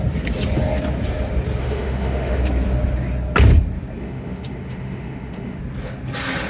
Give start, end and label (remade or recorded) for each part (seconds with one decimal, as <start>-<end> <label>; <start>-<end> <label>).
0.0-1.6 recorded; 1.6-2.4 remade; 2.4-4.0 recorded; 4.0-5.6 remade; 5.6-6.5 recorded